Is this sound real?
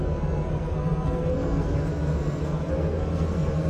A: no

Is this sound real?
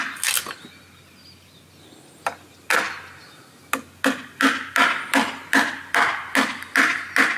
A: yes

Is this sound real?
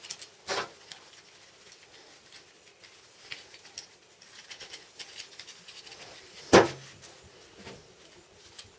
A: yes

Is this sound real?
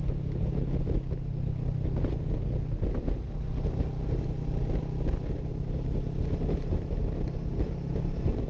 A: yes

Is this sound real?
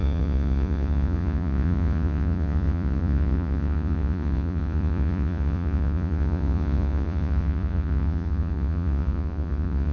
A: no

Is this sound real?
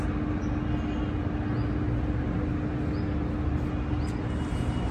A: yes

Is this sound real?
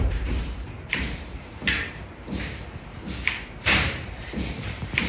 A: no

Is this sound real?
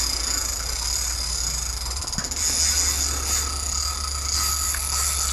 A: yes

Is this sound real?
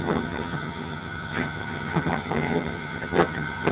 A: no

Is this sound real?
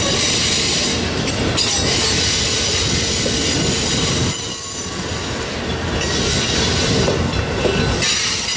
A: yes